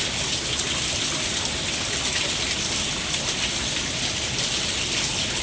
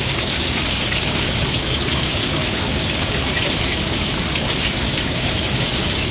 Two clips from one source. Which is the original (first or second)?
first